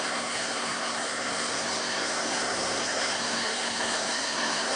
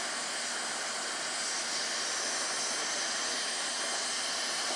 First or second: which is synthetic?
first